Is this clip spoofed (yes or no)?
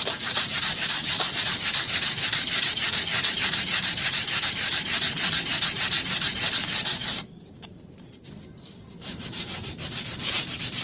yes